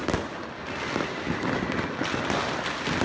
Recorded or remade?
recorded